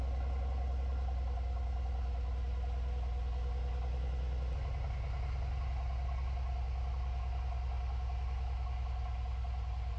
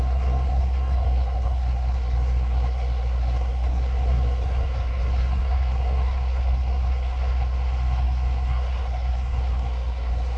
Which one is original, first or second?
first